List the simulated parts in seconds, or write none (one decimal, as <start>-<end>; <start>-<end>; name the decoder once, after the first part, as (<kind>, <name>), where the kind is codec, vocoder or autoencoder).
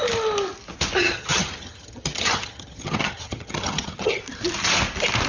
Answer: 1.0-4.2 (vocoder, HiFi-GAN)